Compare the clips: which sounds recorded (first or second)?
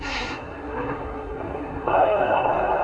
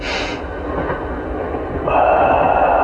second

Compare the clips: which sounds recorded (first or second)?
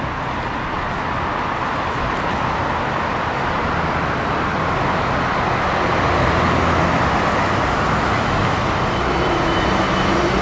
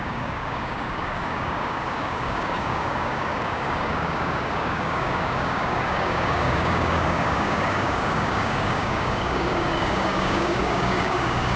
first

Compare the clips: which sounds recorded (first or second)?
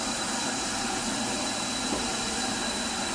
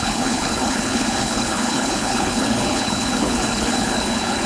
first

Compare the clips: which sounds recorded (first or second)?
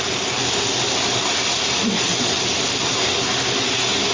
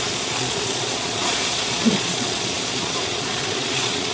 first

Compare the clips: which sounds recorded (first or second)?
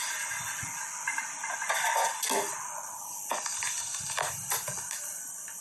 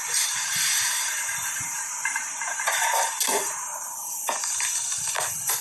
first